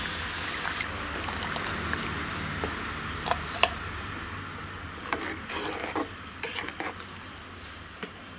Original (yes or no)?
yes